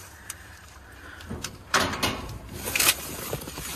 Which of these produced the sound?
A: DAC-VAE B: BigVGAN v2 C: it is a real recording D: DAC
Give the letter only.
B